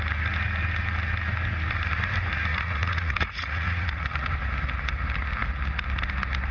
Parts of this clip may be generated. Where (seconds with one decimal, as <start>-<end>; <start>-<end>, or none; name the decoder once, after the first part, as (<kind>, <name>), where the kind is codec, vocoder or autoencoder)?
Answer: 2.5-4.3 (vocoder, Vocos)